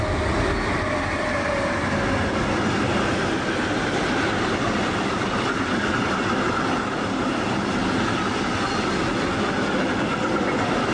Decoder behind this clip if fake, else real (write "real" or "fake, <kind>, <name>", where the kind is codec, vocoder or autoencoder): real